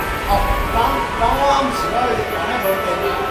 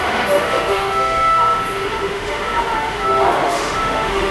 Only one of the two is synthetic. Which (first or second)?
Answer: second